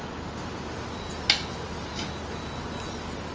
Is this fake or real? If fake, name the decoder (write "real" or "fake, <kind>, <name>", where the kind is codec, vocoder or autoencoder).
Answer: real